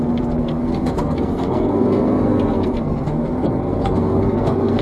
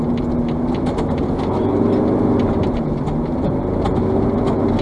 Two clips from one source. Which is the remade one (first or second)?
first